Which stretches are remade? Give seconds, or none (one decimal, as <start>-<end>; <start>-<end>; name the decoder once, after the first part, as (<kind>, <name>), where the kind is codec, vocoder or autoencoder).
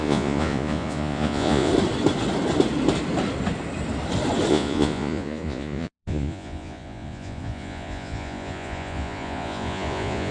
0.0-1.7 (vocoder, Vocos); 4.5-10.3